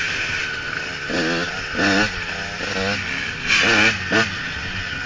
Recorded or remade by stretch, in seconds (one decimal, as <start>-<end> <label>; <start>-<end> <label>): 0.0-5.1 recorded